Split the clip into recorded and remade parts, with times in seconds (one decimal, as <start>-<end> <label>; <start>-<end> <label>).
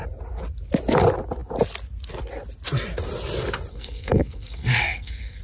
0.0-3.7 recorded; 3.7-5.4 remade